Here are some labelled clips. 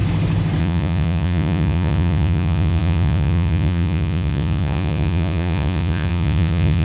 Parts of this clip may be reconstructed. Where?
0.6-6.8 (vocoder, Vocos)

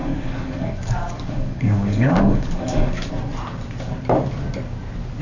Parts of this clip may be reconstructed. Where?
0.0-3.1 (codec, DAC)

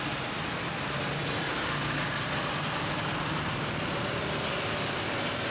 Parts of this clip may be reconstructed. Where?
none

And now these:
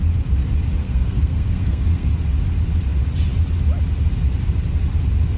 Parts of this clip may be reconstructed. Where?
0.8-2.1 (codec, SNAC)

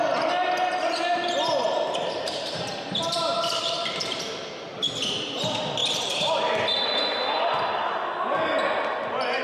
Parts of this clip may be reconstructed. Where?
1.6-4.2 (vocoder, BigVGAN v2)